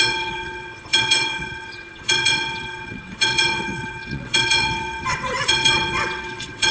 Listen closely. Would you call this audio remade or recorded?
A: remade